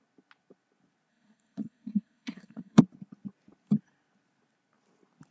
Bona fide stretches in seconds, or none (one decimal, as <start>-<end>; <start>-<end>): 0.0-1.1; 2.8-5.3